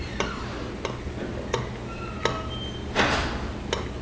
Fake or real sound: real